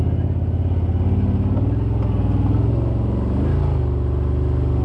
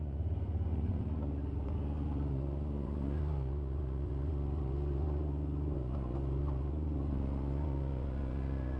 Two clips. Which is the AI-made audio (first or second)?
second